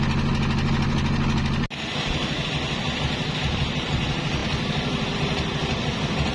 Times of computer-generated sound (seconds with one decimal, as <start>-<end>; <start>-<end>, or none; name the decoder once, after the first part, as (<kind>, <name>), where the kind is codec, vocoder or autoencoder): none